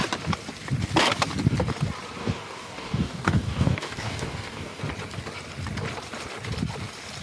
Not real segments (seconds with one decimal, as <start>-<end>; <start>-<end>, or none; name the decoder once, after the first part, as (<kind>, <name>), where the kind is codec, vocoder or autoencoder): 2.2-4.8 (codec, DAC)